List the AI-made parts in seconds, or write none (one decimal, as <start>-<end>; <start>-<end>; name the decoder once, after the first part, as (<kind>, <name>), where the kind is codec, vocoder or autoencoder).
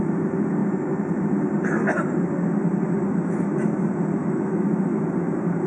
4.2-5.1 (autoencoder, DAC-VAE)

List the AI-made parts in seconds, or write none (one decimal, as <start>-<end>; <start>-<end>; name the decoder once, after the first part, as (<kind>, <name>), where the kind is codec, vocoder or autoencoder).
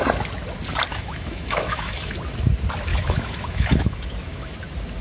0.9-2.1 (autoencoder, DAC-VAE); 2.9-4.5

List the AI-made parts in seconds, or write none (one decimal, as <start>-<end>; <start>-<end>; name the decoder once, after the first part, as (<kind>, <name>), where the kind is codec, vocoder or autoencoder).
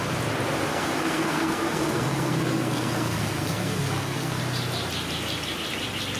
0.7-4.4 (codec, SNAC)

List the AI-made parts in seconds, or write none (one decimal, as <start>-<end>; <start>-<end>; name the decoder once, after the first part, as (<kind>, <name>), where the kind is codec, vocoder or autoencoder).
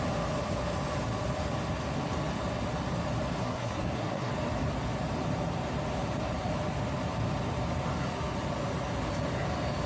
3.4-4.3 (codec, SNAC)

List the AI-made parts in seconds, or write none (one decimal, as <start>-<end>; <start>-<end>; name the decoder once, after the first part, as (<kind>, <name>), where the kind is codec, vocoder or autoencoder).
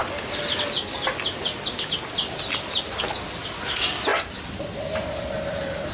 none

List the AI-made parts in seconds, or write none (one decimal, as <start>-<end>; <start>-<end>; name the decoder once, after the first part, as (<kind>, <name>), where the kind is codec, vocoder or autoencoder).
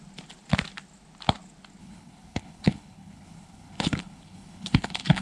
1.8-5.2 (codec, HILCodec)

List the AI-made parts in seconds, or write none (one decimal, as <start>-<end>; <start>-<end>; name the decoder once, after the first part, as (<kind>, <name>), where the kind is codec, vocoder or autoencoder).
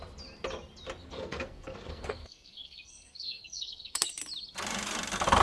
1.0-4.2 (codec, SNAC)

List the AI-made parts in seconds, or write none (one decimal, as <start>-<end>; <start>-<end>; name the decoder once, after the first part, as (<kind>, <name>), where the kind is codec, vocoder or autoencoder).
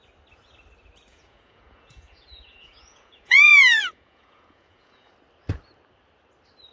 1.1-5.1 (vocoder, Vocos)